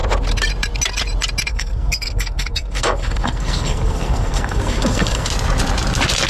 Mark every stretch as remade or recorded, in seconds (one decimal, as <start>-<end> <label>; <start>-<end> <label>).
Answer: 0.0-1.5 recorded; 1.5-5.3 remade; 5.3-6.3 recorded